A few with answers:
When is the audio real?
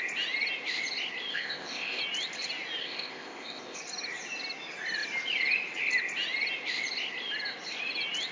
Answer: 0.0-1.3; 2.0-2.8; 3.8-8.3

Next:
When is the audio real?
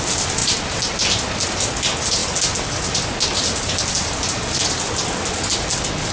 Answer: 0.0-6.1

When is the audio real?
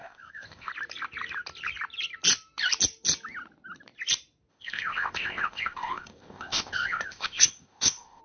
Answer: 0.7-4.5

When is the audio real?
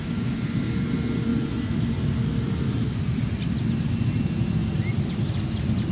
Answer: 0.0-5.9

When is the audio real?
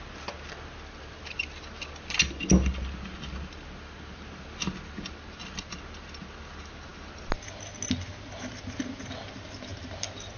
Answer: 0.0-10.4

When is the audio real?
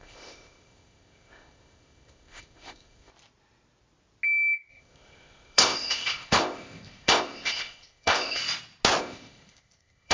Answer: 3.1-4.7; 8.4-9.0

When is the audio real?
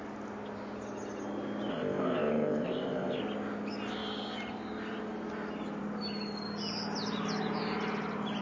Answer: 0.0-1.7; 3.2-8.4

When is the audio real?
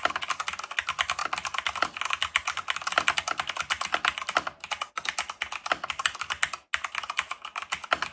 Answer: 0.0-8.1